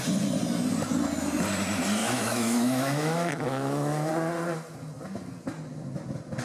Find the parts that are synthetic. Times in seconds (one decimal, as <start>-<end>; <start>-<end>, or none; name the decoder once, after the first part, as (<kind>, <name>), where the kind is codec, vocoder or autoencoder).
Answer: 2.0-4.1 (autoencoder, DAC-VAE)